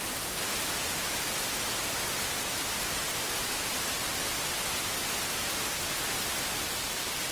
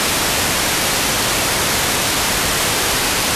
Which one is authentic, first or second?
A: first